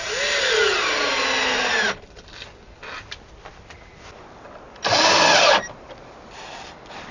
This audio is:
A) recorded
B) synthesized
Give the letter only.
A